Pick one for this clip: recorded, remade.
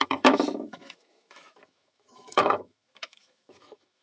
remade